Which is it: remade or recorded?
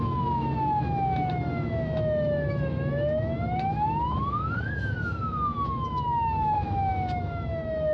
remade